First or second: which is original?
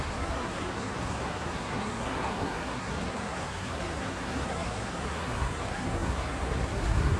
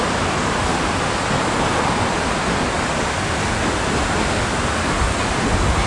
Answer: second